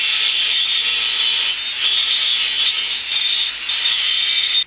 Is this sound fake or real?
real